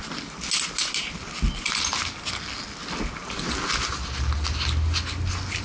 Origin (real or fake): real